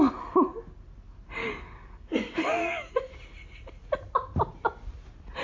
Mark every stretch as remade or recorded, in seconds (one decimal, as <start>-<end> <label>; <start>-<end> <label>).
0.0-1.4 recorded; 1.4-2.9 remade; 2.9-5.4 recorded